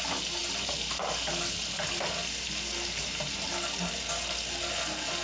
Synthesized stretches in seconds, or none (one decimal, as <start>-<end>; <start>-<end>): none